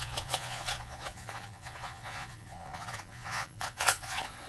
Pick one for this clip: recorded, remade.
remade